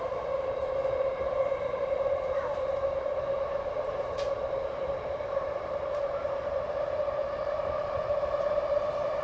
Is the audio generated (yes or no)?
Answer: yes